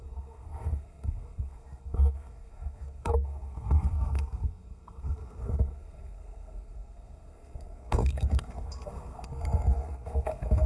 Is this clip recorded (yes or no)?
no